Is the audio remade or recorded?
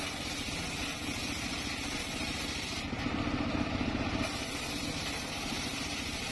recorded